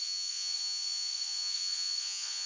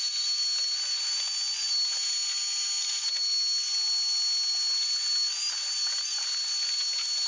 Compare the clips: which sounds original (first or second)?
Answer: second